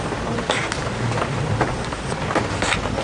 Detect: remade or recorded recorded